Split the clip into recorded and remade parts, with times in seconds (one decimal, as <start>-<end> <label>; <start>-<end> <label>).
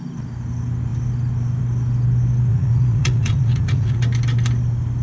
0.0-2.5 recorded; 2.5-4.0 remade; 4.0-5.0 recorded